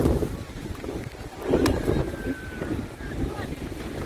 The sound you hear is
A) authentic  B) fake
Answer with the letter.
A